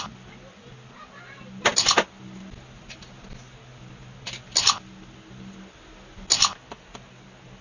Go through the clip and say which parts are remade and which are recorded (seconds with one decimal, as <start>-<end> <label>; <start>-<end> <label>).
0.0-7.6 recorded